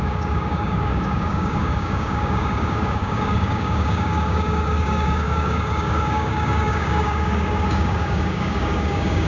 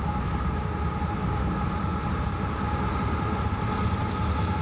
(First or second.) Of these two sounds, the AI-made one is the first